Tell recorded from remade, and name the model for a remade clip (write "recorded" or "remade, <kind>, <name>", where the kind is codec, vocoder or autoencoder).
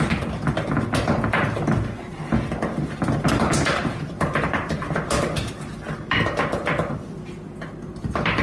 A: recorded